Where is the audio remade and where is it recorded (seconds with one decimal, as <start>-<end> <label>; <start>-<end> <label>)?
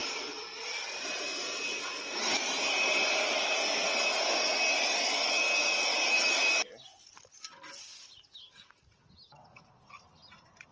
0.0-10.7 recorded